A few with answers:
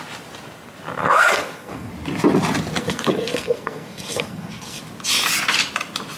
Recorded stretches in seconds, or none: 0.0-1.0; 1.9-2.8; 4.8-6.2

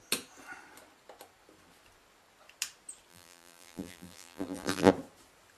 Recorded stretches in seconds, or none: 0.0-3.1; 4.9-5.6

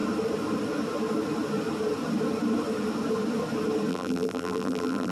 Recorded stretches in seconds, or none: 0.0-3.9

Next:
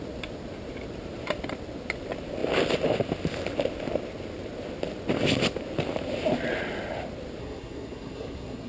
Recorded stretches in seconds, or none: 0.0-7.4

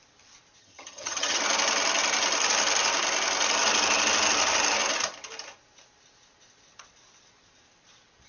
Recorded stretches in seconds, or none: 0.0-0.6; 1.4-8.3

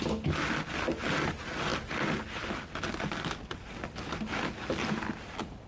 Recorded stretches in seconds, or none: 0.0-5.7